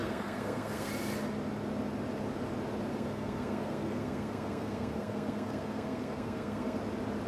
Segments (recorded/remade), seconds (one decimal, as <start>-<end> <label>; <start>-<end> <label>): 0.0-0.9 remade; 0.9-2.9 recorded; 2.9-6.8 remade; 6.8-7.3 recorded